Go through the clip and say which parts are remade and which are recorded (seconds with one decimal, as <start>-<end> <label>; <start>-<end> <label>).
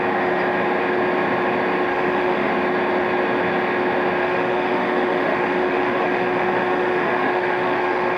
0.0-1.9 recorded; 1.9-2.5 remade; 2.5-4.2 recorded; 4.2-8.2 remade